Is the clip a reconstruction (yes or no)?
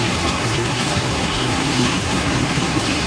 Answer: yes